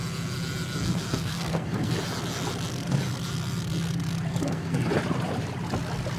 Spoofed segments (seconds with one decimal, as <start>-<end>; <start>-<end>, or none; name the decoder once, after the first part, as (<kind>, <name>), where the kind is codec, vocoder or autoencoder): 0.8-1.9 (codec, SNAC); 4.3-4.9